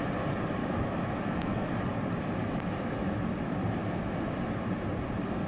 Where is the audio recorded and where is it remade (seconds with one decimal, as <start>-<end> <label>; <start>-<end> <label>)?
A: 0.0-0.6 recorded; 0.6-1.8 remade; 1.8-2.4 recorded; 2.4-3.1 remade; 3.1-3.8 recorded; 3.8-4.5 remade; 4.5-5.5 recorded